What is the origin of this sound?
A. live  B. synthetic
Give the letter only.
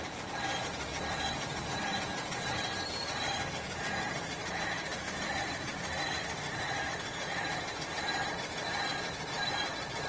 B